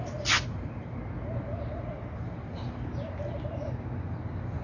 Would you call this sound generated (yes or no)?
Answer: no